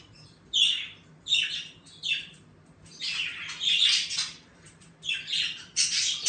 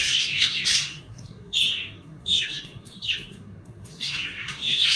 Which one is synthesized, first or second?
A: second